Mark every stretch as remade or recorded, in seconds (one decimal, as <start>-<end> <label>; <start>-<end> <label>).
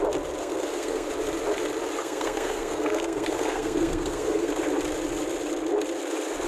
0.0-0.4 recorded; 0.4-1.1 remade; 1.1-2.0 recorded; 2.0-4.5 remade; 4.5-6.5 recorded